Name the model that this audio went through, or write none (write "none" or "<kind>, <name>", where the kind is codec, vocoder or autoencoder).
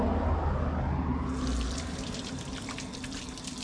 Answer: none